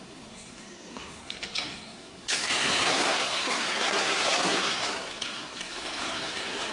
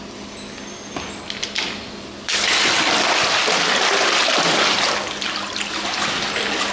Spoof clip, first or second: first